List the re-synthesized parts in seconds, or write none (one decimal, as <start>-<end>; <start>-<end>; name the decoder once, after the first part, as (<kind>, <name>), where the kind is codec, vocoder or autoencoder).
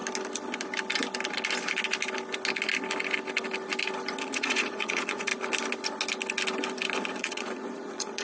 4.3-5.3 (vocoder, Vocos); 7.1-8.2